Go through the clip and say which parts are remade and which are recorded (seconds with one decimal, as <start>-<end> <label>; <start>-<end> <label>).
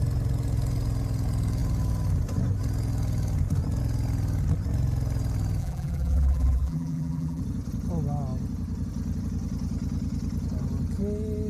0.0-5.6 recorded; 5.6-7.4 remade; 7.4-11.5 recorded